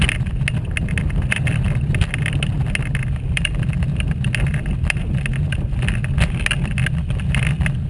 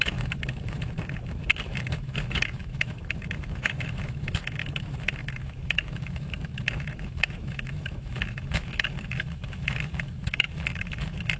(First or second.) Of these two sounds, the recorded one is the first